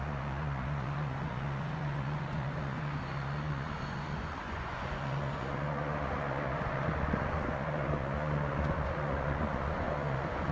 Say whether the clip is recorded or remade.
remade